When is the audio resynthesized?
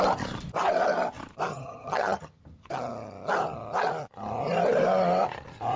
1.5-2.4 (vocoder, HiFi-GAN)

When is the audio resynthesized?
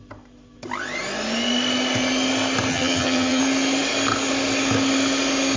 2.7-3.4 (vocoder, HiFi-GAN)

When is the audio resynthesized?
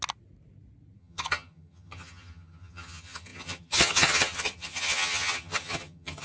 1.0-6.2 (vocoder, HiFi-GAN)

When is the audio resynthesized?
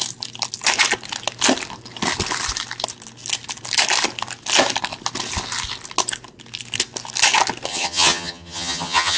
7.7-9.2 (vocoder, HiFi-GAN)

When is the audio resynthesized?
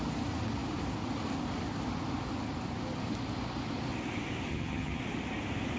4.5-5.0 (vocoder, HiFi-GAN)